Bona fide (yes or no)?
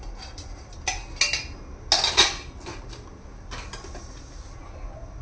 yes